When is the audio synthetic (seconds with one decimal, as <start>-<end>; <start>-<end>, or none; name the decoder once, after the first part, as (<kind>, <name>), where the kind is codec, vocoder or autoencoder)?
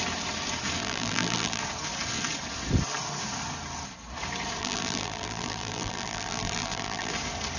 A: 0.8-1.6 (vocoder, BigVGAN v2); 4.6-7.1